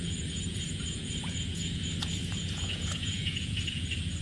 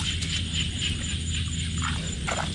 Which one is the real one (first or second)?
second